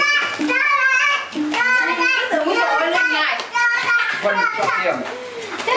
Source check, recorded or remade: recorded